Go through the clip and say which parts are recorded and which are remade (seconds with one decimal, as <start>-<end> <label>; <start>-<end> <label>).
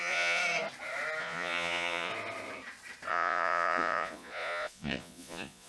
0.0-0.4 remade; 0.4-1.2 recorded; 1.2-2.1 remade; 2.1-3.1 recorded; 3.1-5.7 remade